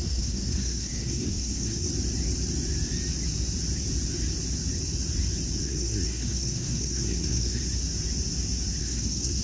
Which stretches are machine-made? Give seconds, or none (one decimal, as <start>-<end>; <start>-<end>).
0.0-1.9; 5.6-7.6; 8.8-9.4